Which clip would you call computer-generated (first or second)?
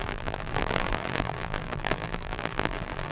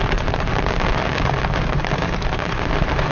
first